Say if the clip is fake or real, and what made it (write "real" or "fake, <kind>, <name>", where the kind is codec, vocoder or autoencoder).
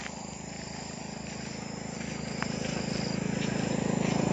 real